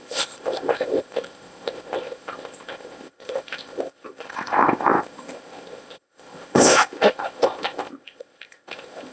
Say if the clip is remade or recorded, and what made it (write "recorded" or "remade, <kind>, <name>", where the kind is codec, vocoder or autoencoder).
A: remade, codec, ZipCodec